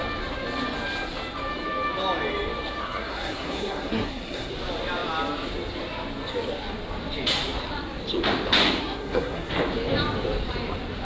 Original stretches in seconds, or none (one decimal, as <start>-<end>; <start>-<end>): 0.0-2.8; 4.5-8.8; 9.5-11.0